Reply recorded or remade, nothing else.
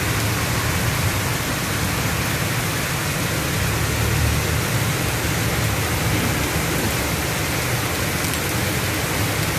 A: recorded